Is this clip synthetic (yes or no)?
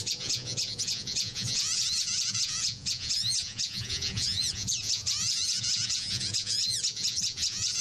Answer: yes